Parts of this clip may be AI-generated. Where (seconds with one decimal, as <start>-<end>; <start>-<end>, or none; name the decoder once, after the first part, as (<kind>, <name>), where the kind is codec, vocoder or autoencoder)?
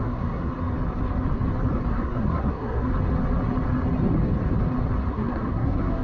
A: 0.0-0.5 (codec, SNAC); 1.9-2.9; 5.1-6.0